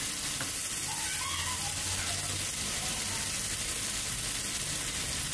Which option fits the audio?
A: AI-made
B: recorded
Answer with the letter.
B